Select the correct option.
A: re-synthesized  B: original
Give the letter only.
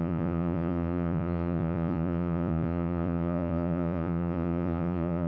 A